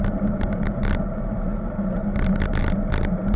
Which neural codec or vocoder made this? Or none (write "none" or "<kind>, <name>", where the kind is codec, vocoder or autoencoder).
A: none